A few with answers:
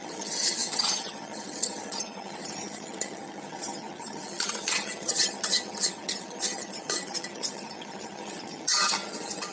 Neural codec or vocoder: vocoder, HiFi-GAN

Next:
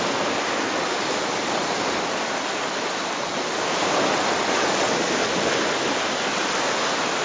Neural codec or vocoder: none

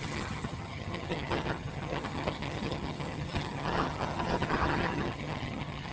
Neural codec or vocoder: vocoder, HiFi-GAN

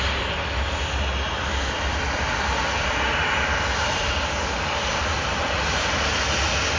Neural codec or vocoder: none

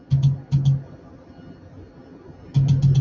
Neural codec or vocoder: none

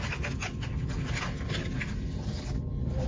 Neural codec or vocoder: none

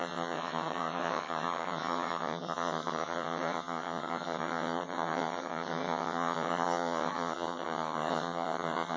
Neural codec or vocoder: vocoder, HiFi-GAN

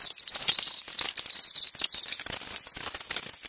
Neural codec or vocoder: none